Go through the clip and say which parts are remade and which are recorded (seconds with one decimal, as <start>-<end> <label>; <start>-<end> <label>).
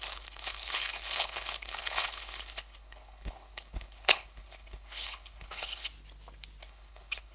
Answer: 0.0-5.9 remade; 5.9-6.6 recorded; 6.6-7.3 remade